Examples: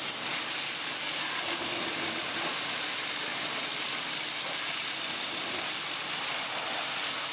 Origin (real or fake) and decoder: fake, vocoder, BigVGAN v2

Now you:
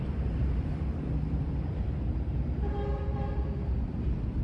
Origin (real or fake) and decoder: real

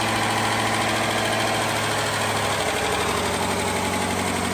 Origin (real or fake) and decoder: real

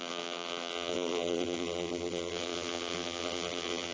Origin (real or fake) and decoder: fake, vocoder, BigVGAN v2